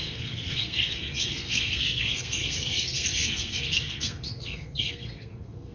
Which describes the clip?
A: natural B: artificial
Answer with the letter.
B